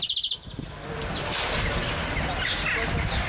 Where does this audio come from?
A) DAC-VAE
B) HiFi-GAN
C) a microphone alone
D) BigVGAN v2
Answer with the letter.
C